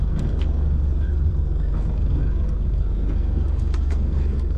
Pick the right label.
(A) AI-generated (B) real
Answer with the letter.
A